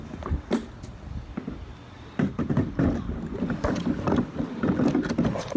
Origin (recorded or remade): recorded